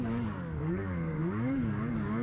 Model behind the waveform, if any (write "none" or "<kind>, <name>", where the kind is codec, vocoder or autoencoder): codec, DAC